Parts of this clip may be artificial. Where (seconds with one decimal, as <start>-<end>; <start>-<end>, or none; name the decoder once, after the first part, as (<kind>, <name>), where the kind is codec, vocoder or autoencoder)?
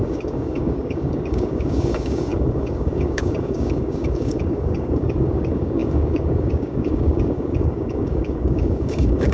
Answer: 0.0-9.3 (codec, DAC)